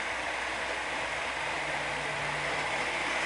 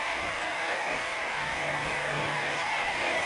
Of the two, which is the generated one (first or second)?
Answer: second